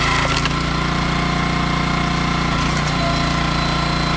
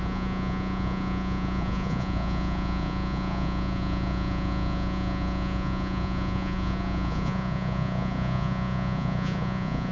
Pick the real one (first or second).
first